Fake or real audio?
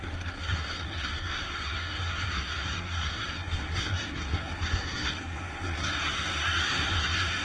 fake